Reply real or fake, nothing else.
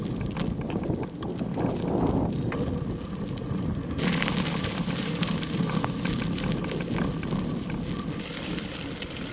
real